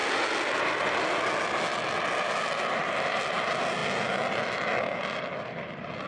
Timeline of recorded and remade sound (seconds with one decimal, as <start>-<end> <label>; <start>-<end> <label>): 0.0-6.1 recorded